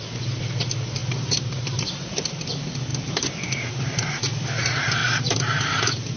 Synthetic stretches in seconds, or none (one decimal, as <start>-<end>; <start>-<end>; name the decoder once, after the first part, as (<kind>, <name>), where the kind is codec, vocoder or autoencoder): 1.0-2.4 (vocoder, BigVGAN v2); 2.9-3.7; 5.0-6.2